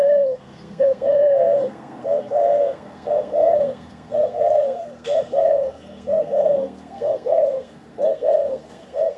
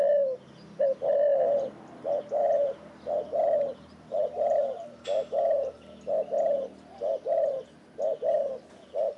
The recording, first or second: second